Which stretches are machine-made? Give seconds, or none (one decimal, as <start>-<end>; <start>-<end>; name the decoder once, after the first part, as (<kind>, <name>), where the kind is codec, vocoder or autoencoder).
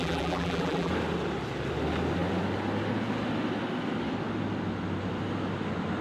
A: 0.0-0.9 (vocoder, BigVGAN v2)